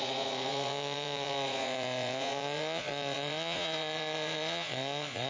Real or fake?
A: fake